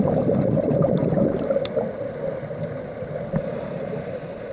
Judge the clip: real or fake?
real